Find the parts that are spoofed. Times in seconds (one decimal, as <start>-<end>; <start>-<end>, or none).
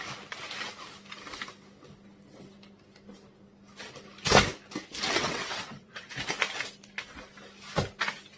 5.2-6.1